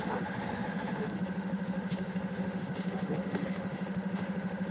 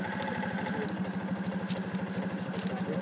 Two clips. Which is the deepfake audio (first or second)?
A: first